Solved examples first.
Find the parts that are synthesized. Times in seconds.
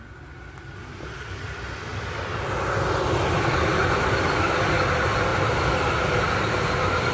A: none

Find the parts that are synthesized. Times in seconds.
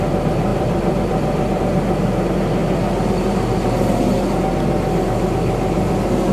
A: 0.5-1.6 (vocoder, BigVGAN v2)